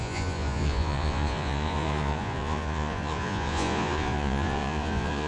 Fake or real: fake